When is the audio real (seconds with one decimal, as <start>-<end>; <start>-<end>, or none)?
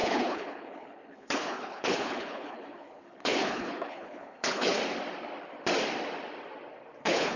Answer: 4.8-7.0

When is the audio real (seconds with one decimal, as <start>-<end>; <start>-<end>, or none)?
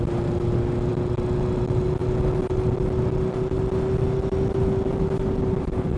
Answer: 0.0-6.0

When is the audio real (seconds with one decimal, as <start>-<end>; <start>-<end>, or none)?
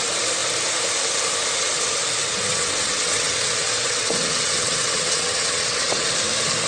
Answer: 0.0-2.2; 6.1-6.7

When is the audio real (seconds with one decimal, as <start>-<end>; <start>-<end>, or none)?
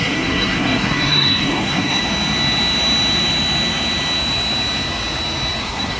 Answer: 2.0-5.6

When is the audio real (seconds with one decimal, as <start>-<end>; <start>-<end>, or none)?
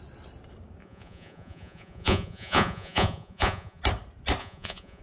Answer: 0.0-0.8; 3.8-4.4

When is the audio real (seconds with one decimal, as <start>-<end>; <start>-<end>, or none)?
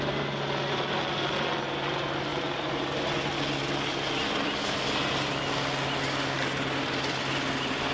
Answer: 0.0-7.9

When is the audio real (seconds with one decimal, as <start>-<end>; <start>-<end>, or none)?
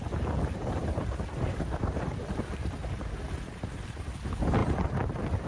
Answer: 0.0-0.8; 4.1-4.6